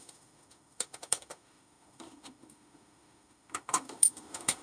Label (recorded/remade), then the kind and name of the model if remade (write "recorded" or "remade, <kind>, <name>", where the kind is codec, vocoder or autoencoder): remade, autoencoder, DAC-VAE